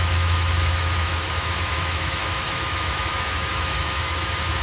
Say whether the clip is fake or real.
fake